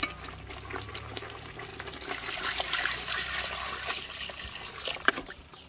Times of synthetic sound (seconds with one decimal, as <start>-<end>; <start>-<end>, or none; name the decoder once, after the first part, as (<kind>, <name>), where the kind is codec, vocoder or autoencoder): 0.9-1.7 (vocoder, BigVGAN v2); 5.1-5.7